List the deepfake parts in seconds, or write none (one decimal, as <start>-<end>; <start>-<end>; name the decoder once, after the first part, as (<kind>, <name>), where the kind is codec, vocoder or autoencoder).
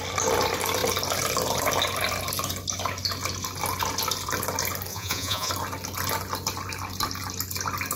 4.9-5.5 (vocoder, Vocos)